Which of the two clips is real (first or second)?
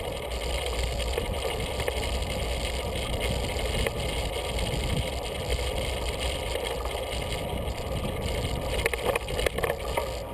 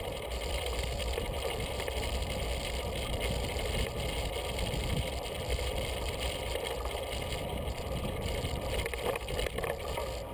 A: first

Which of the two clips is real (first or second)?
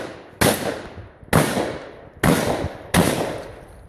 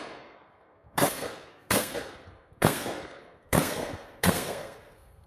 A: first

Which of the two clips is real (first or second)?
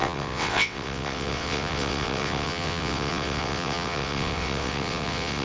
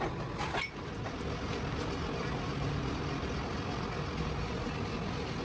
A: second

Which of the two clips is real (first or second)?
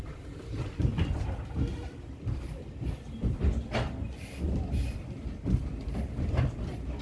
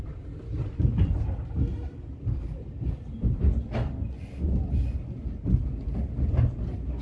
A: second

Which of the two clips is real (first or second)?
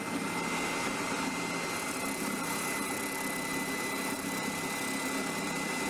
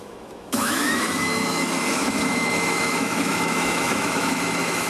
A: first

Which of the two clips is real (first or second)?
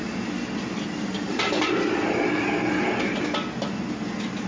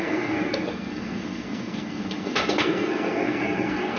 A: first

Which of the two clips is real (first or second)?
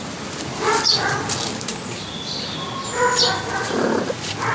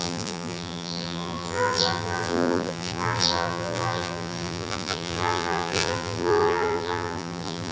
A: first